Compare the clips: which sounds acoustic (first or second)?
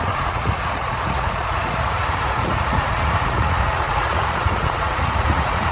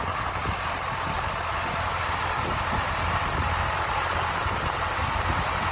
second